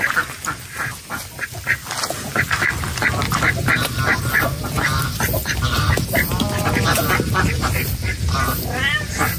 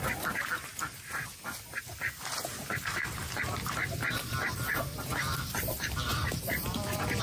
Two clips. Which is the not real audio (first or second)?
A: second